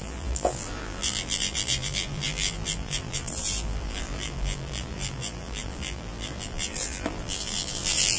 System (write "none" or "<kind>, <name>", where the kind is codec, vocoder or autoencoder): vocoder, BigVGAN v2